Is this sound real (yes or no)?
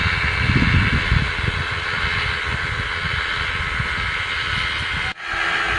yes